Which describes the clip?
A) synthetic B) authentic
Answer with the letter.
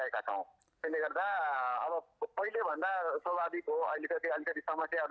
B